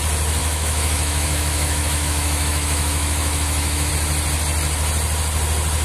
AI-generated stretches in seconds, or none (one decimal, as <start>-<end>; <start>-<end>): 0.4-3.9